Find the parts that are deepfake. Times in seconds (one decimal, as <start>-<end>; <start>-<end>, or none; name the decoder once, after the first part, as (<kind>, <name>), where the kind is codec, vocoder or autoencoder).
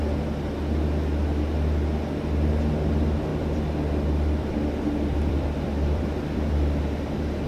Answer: 3.3-6.8 (vocoder, BigVGAN v2)